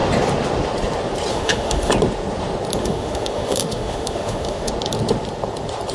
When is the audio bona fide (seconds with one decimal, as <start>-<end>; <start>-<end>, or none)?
0.0-1.3; 1.9-2.8; 4.7-5.9